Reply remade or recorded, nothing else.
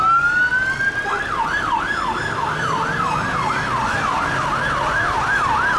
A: recorded